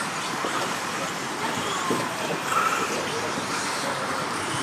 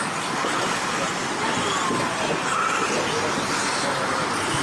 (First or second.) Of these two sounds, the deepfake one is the first